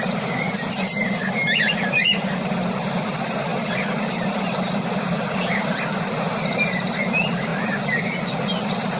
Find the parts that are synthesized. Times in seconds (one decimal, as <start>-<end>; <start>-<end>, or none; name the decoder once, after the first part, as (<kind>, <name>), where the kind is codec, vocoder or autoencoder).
3.5-6.1 (vocoder, BigVGAN v2)